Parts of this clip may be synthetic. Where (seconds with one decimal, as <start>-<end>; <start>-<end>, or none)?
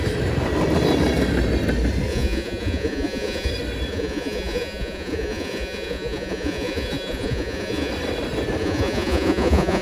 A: 2.1-3.5; 3.9-7.9; 8.6-9.8